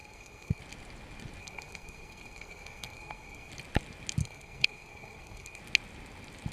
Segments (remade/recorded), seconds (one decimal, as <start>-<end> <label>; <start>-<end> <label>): 0.0-0.6 remade; 0.6-1.4 recorded; 1.4-3.5 remade; 3.5-4.2 recorded; 4.2-5.6 remade; 5.6-6.5 recorded